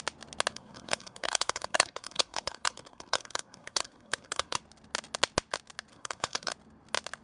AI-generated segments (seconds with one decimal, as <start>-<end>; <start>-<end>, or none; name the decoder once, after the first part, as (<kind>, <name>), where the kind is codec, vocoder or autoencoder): 0.5-4.6 (codec, SNAC); 5.9-6.5